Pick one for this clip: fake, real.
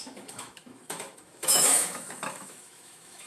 fake